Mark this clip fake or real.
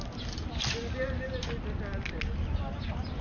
real